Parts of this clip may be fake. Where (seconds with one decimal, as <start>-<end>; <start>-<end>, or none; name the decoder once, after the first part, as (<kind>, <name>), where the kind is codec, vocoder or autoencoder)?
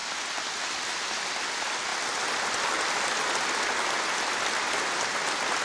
none